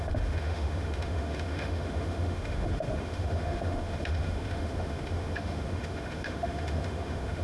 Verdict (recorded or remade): remade